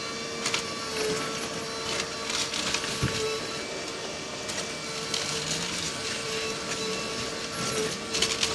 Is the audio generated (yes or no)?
no